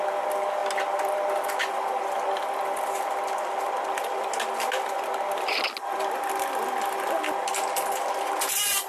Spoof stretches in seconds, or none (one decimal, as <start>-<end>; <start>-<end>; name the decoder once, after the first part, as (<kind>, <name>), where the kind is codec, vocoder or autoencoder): none